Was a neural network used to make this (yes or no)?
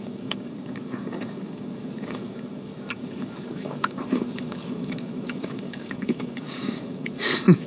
yes